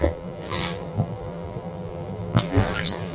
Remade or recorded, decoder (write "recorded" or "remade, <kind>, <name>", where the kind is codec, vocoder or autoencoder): remade, vocoder, BigVGAN v2